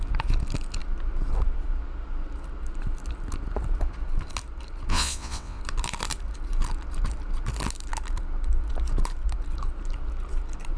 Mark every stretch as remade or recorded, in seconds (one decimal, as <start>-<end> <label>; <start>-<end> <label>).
0.0-4.9 recorded; 4.9-5.6 remade; 5.6-10.8 recorded